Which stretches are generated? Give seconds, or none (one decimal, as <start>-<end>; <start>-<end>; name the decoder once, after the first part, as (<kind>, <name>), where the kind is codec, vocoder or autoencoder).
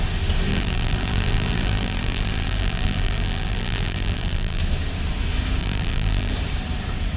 0.5-4.6 (vocoder, BigVGAN v2); 5.6-6.3